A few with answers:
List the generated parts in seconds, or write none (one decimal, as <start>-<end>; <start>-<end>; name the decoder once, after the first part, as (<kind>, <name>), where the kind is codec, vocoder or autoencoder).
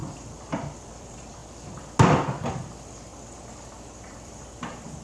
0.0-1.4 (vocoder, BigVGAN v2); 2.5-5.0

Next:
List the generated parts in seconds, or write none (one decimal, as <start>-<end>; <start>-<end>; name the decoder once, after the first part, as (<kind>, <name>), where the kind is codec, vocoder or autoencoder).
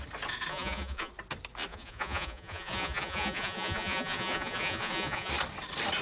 0.5-1.1 (vocoder, Vocos); 1.7-5.3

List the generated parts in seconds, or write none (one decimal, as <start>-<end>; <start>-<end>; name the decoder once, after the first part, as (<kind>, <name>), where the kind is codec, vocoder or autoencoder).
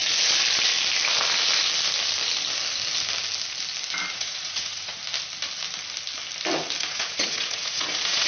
4.1-5.0 (vocoder, Vocos); 6.8-8.3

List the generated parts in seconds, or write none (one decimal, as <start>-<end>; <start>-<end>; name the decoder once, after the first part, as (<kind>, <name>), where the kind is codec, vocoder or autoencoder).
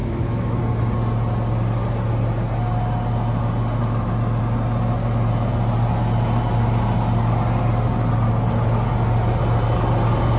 0.0-0.6 (autoencoder, DAC-VAE)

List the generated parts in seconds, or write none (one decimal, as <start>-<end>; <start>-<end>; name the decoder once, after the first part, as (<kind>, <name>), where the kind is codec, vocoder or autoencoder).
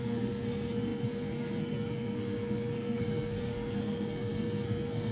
0.0-5.1 (codec, SNAC)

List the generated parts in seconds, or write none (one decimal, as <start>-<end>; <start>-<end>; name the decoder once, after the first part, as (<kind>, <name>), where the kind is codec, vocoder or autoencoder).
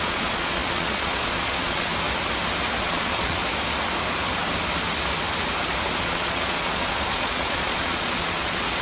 0.0-1.9 (vocoder, Vocos); 2.8-3.4; 6.0-8.8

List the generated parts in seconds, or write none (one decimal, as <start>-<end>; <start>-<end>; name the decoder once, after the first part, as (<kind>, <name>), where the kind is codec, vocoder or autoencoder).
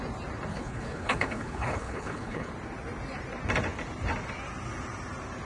0.5-2.5 (codec, HILCodec)